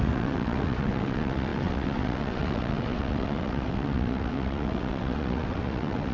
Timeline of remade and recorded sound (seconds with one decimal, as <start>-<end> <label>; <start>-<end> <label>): 0.0-6.1 remade